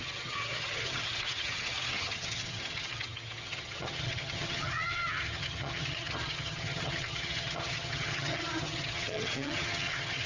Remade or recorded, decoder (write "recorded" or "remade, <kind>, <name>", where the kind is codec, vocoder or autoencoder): remade, vocoder, HiFi-GAN